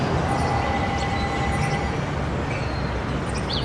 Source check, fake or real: real